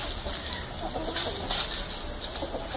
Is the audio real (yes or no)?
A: yes